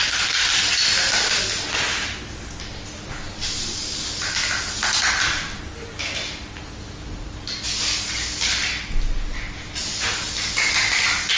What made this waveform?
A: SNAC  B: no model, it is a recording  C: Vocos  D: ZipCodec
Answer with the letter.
B